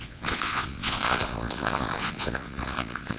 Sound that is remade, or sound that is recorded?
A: remade